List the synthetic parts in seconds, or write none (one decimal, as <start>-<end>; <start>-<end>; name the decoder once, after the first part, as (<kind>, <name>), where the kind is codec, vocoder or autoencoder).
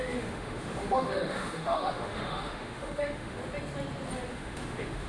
0.0-3.4 (autoencoder, DAC-VAE); 4.3-5.1